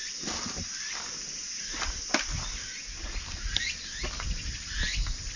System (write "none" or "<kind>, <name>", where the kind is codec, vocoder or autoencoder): none